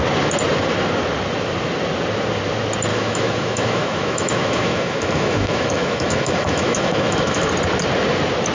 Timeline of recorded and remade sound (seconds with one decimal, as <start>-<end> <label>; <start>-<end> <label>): 0.0-2.9 recorded; 2.9-7.5 remade; 7.5-8.5 recorded